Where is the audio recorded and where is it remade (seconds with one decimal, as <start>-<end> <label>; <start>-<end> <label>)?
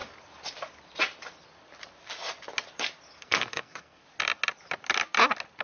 0.0-3.2 recorded; 3.2-4.0 remade; 4.0-5.6 recorded